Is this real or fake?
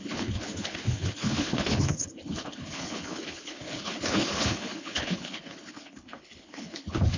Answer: fake